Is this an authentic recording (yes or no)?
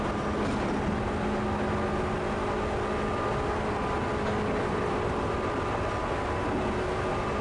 yes